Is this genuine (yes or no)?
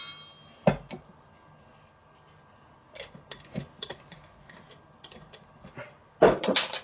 yes